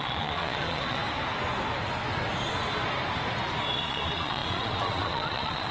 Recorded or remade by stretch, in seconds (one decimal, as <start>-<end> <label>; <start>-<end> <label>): 0.0-1.0 remade; 1.0-3.7 recorded; 3.7-5.7 remade